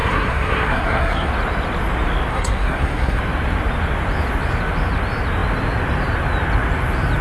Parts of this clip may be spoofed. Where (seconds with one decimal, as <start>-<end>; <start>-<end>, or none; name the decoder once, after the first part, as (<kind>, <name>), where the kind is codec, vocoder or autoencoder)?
0.0-1.3 (codec, SNAC); 2.3-3.2